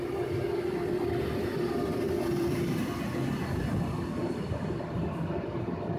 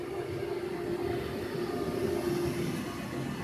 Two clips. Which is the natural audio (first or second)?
second